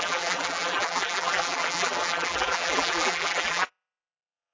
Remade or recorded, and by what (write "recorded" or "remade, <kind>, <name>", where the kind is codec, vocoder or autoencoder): remade, vocoder, BigVGAN v2